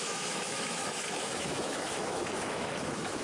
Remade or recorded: remade